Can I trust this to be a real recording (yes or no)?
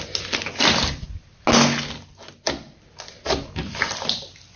yes